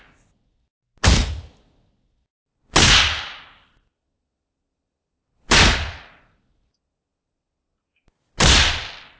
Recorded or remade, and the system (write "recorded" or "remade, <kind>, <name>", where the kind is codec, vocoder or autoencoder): recorded